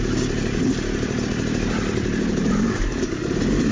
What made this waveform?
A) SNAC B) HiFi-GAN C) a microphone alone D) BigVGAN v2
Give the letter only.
C